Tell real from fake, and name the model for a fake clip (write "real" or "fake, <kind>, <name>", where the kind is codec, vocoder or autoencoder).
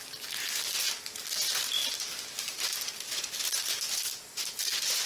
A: real